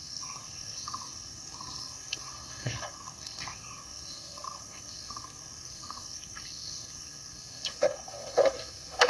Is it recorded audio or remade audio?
remade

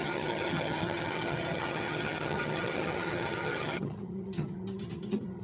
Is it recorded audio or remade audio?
remade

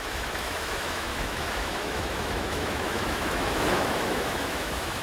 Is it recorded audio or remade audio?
remade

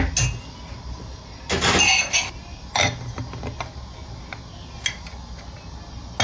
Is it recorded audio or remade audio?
recorded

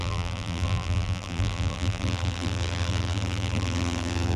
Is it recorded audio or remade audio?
remade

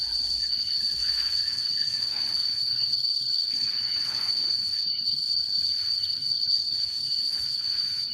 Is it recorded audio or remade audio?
remade